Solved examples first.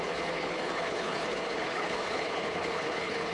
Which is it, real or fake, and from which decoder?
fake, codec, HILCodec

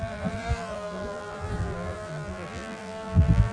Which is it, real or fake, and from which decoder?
fake, vocoder, BigVGAN v2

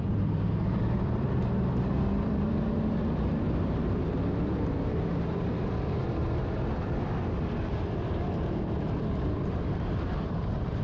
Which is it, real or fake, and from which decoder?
fake, vocoder, BigVGAN v2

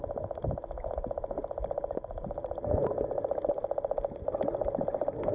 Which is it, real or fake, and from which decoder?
real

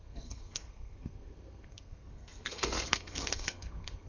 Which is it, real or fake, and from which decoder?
fake, codec, SNAC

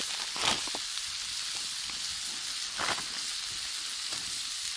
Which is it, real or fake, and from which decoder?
real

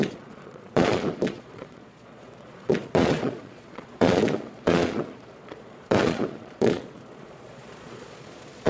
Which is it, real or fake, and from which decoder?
fake, vocoder, Vocos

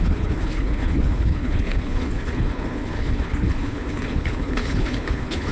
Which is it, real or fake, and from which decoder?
fake, codec, HILCodec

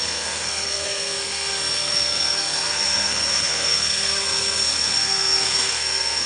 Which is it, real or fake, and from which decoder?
fake, codec, SNAC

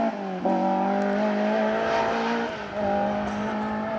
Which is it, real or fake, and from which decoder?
real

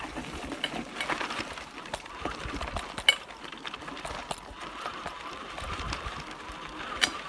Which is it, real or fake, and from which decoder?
real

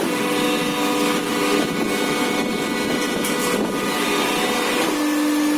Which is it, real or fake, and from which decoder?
real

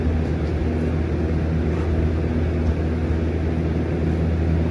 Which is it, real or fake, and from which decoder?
real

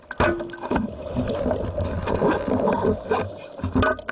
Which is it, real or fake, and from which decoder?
real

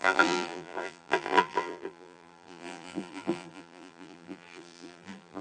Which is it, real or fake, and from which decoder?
fake, vocoder, BigVGAN v2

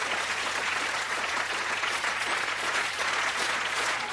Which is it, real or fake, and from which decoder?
fake, vocoder, Vocos